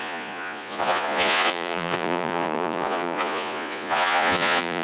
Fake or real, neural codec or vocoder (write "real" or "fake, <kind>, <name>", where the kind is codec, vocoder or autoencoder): fake, vocoder, Vocos